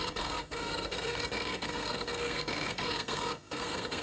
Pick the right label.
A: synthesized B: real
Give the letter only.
A